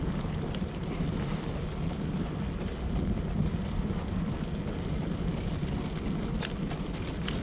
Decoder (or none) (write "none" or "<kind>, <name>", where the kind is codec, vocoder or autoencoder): none